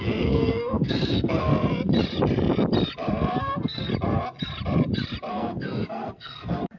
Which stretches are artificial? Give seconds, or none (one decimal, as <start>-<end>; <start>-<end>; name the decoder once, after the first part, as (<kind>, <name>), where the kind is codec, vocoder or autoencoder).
0.0-1.5 (codec, SNAC); 3.4-3.9; 5.3-6.8